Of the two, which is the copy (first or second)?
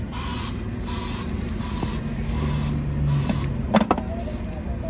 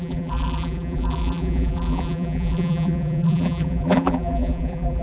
second